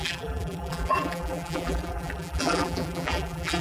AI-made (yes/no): yes